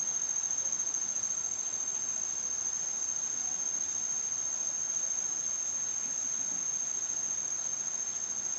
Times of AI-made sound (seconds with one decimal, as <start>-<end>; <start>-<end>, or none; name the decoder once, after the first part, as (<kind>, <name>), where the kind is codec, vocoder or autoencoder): none